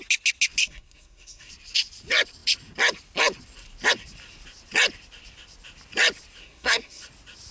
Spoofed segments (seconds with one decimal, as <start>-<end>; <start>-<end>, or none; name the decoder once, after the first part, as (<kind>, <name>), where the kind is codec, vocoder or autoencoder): 0.6-1.5 (codec, SNAC); 6.4-7.0